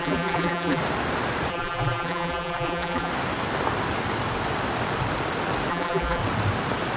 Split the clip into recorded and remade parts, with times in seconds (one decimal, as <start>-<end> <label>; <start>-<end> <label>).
0.0-0.8 remade; 0.8-1.5 recorded; 1.5-3.1 remade; 3.1-5.7 recorded; 5.7-6.2 remade; 6.2-7.0 recorded